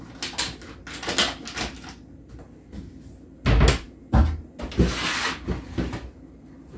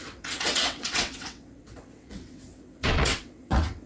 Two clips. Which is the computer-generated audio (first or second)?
second